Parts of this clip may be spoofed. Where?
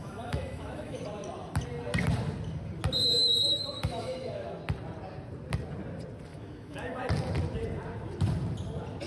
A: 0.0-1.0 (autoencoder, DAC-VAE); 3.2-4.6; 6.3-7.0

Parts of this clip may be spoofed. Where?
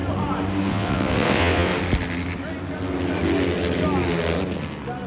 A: 0.7-1.7 (vocoder, WaveNeXt)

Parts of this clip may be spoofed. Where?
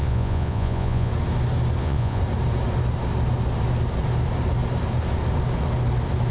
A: 0.0-1.1 (vocoder, Vocos); 1.8-2.2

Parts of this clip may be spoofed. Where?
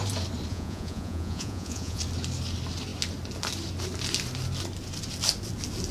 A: 0.5-2.0 (vocoder, Vocos)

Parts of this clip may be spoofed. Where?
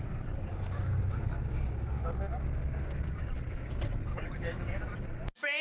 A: 0.5-3.3 (codec, DAC); 4.1-4.8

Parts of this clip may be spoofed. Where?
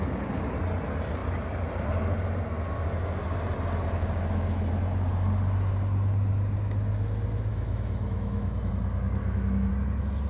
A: 7.5-8.7 (autoencoder, DAC-VAE); 9.2-9.7